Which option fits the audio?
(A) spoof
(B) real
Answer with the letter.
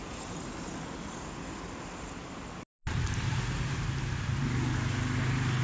B